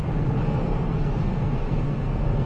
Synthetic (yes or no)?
yes